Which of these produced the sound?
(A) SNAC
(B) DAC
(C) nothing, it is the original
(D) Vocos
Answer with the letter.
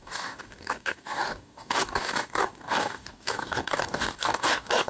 B